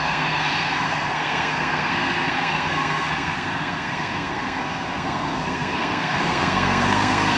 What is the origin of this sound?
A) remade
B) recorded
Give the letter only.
A